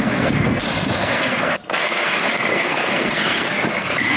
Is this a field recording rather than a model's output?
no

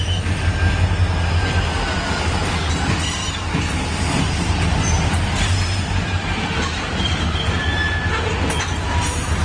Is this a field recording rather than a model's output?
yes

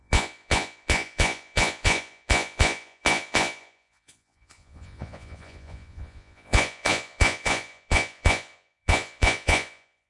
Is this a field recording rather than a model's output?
no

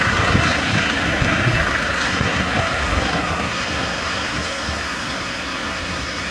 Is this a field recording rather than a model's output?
no